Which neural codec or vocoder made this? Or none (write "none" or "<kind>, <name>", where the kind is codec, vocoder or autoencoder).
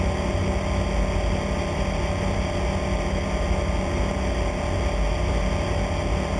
none